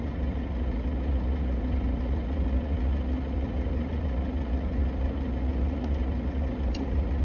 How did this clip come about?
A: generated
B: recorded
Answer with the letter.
A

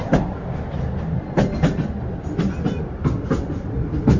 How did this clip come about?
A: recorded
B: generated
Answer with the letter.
A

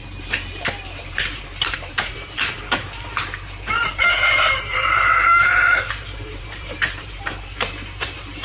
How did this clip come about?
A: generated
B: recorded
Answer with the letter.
A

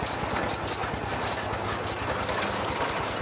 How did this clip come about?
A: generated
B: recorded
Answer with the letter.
B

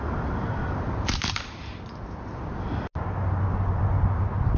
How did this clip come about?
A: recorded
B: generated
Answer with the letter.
A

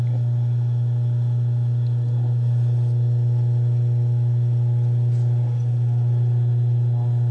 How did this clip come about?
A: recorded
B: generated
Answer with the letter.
A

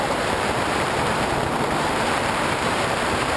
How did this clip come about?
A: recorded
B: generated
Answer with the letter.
B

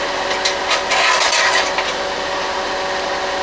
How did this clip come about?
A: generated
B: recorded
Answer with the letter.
B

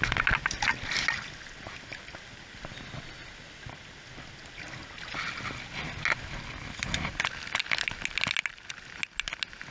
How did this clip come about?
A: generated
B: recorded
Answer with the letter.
B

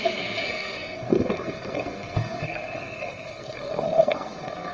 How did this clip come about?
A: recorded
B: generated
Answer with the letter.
B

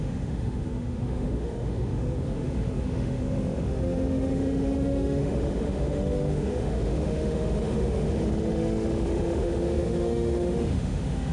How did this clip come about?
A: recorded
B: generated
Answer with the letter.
B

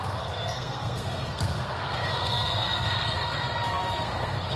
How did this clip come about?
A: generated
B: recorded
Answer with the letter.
A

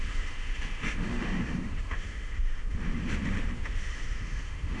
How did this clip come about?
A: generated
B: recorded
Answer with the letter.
A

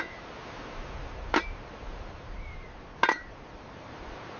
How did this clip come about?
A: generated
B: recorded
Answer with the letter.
B